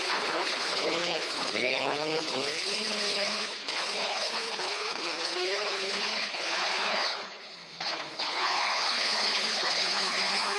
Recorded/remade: remade